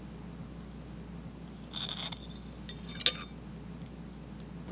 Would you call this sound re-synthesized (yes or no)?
no